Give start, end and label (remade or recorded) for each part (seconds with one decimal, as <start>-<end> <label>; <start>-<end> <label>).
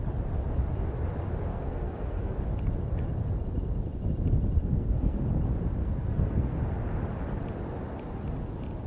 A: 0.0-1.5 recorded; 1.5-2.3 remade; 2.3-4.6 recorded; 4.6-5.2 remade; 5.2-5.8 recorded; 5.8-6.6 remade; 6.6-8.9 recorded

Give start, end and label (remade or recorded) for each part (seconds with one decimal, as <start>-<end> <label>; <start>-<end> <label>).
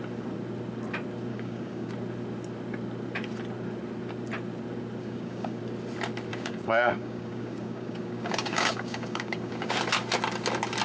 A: 0.0-1.3 recorded; 1.3-1.9 remade; 1.9-5.0 recorded; 5.0-5.6 remade; 5.6-6.3 recorded; 6.3-9.7 remade; 9.7-10.8 recorded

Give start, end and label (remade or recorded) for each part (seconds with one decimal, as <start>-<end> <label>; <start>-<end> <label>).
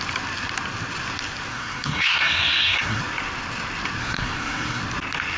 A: 0.0-1.5 recorded; 1.5-3.0 remade; 3.0-4.0 recorded; 4.0-4.8 remade; 4.8-5.4 recorded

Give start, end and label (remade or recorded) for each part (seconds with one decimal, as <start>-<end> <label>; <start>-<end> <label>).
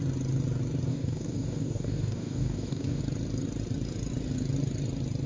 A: 0.0-0.9 recorded; 0.9-3.0 remade; 3.0-5.3 recorded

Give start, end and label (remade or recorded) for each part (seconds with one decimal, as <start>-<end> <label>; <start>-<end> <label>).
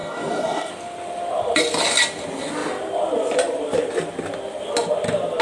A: 0.0-0.7 remade; 0.7-5.4 recorded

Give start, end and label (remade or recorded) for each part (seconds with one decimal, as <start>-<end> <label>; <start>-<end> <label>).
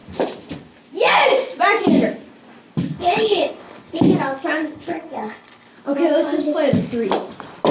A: 0.0-2.9 recorded; 2.9-4.0 remade; 4.0-4.6 recorded; 4.6-5.7 remade; 5.7-7.7 recorded